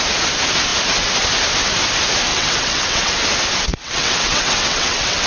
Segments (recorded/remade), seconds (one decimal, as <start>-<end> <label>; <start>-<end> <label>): 0.0-2.3 recorded; 2.3-3.1 remade; 3.1-3.7 recorded; 3.7-5.3 remade